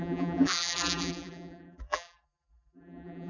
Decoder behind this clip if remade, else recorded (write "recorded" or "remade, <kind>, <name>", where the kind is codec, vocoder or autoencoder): remade, vocoder, BigVGAN v2